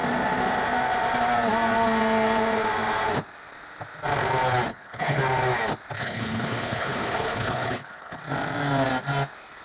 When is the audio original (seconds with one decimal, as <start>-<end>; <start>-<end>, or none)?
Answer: 0.0-4.7; 5.2-6.0; 8.2-9.6